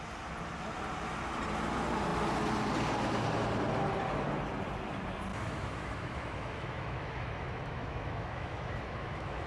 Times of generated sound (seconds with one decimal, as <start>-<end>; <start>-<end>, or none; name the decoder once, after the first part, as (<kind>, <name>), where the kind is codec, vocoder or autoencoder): 5.3-9.5 (autoencoder, DAC-VAE)